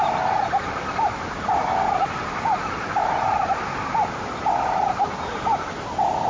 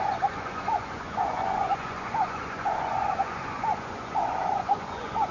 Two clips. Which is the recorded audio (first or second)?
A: first